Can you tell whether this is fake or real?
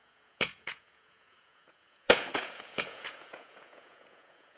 fake